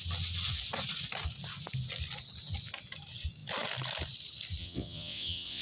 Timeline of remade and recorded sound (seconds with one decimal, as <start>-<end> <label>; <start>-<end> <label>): 0.0-4.6 recorded; 4.6-5.6 remade